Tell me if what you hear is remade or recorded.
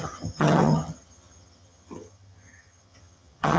remade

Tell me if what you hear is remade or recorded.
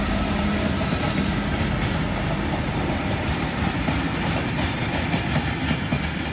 recorded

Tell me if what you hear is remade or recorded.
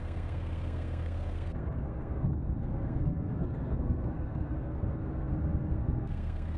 remade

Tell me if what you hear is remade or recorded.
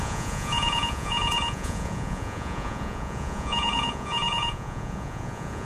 remade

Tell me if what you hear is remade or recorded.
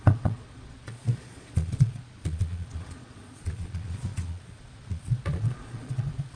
remade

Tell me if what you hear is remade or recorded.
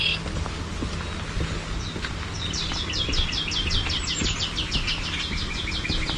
recorded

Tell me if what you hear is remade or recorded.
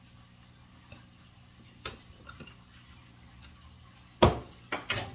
recorded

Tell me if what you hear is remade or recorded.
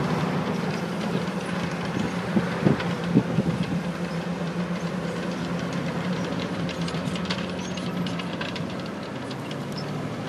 remade